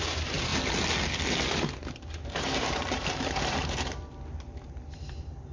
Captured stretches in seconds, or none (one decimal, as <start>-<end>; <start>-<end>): 0.5-1.9